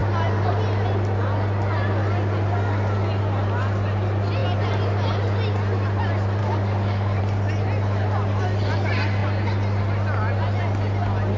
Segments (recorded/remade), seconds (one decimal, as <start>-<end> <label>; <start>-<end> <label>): 0.0-6.4 recorded; 6.4-7.2 remade; 7.2-11.4 recorded